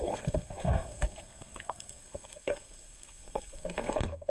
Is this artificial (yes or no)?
yes